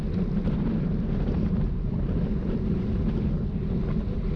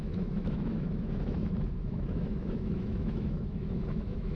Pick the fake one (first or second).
second